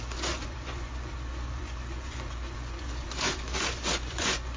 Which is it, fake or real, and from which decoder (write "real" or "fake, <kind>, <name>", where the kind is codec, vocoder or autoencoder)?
fake, vocoder, Vocos